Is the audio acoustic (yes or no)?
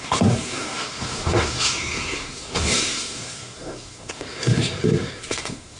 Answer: no